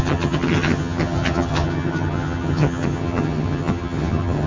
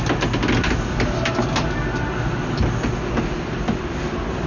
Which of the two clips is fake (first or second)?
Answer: first